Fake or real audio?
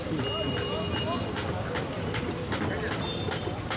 real